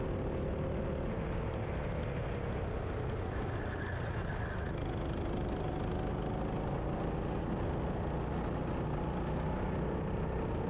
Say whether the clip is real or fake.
real